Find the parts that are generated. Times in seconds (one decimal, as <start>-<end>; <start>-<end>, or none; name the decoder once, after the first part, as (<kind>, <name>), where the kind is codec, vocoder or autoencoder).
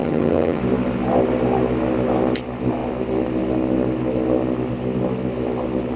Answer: 0.0-0.6 (vocoder, HiFi-GAN)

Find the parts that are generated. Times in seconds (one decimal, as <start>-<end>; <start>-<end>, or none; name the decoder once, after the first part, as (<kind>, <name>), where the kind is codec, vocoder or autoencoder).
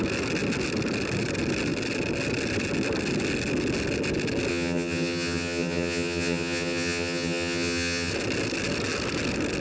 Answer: 4.5-8.1 (vocoder, HiFi-GAN)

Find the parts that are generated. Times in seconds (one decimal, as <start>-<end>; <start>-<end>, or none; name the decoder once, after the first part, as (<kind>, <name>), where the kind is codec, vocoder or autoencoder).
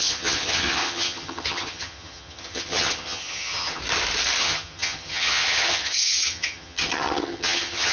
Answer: 0.0-3.8 (vocoder, HiFi-GAN); 4.4-7.9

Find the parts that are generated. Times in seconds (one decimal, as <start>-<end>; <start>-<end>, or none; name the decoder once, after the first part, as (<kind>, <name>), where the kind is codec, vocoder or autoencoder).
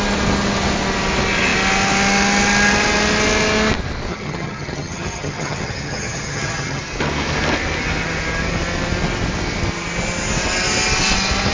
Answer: 4.1-6.8 (vocoder, HiFi-GAN)